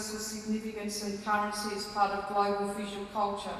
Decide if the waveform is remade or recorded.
recorded